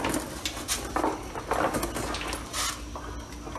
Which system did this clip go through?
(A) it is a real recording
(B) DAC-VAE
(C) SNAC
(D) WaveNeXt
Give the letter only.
A